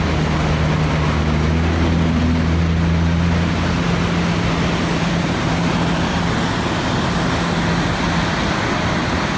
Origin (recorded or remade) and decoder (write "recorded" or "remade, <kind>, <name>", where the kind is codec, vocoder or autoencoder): recorded